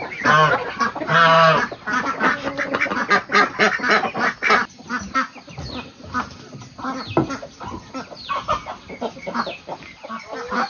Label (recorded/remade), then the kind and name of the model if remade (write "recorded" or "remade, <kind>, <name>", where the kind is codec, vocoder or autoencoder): recorded